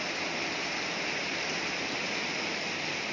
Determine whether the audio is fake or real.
real